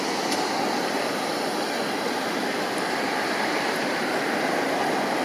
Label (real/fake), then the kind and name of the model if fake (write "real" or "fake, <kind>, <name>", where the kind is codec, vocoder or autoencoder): real